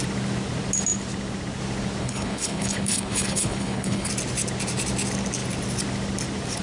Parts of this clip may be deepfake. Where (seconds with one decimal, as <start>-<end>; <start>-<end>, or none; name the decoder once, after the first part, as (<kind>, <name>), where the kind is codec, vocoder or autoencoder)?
2.0-4.1 (codec, HILCodec)